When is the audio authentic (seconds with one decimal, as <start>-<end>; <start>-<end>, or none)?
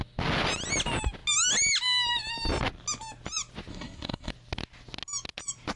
0.0-3.7; 4.3-5.8